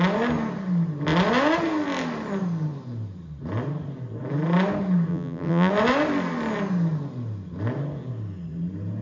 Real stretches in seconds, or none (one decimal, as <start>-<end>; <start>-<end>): 0.0-5.1; 5.7-9.0